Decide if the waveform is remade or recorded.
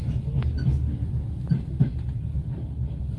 recorded